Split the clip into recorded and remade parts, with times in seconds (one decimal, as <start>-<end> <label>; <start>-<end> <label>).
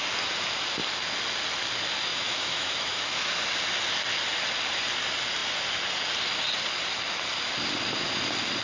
0.0-2.1 recorded; 2.1-3.3 remade; 3.3-8.6 recorded